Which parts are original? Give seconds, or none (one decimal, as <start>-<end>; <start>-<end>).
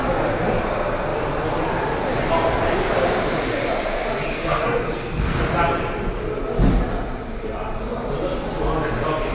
0.0-4.3; 5.4-9.3